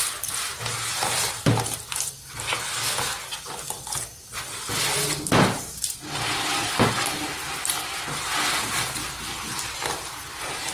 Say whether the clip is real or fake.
real